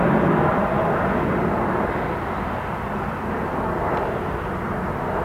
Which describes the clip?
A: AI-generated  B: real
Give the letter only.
B